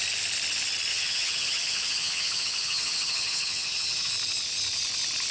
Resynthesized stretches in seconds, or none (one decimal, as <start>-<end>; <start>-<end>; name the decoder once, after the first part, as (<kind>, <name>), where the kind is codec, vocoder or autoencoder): 0.9-4.1 (vocoder, HiFi-GAN)